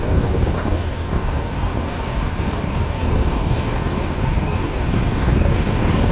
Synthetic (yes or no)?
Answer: yes